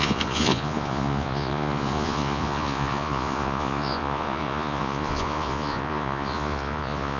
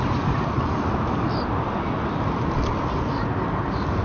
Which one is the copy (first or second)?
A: first